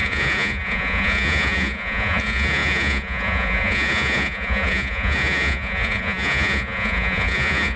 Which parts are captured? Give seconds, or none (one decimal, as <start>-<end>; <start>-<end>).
none